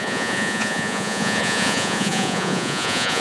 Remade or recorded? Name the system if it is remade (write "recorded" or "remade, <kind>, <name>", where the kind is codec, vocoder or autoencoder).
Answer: remade, vocoder, Vocos